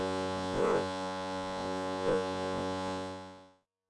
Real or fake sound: fake